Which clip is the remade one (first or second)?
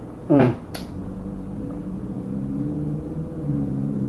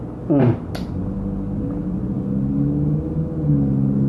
first